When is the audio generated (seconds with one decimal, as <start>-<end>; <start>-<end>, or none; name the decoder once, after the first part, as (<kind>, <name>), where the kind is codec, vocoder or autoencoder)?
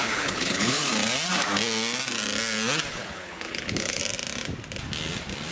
0.0-0.8 (codec, HILCodec); 2.9-4.0